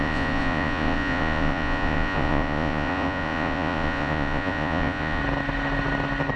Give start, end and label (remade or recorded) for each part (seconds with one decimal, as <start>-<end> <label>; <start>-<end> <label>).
0.0-5.2 remade; 5.2-6.4 recorded